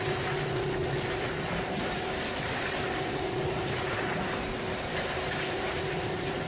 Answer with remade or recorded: recorded